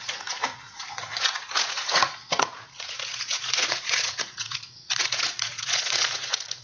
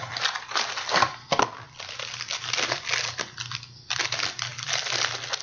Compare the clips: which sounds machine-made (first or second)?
first